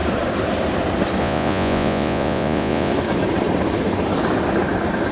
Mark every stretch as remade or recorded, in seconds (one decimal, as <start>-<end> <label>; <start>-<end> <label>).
0.0-1.2 recorded; 1.2-2.9 remade; 2.9-5.1 recorded